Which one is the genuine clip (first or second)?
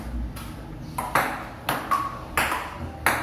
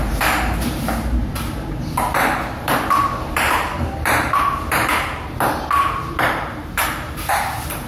first